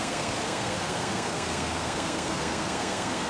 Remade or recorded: remade